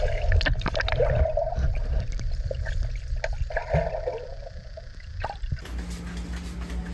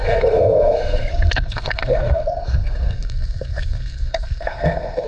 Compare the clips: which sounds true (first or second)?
first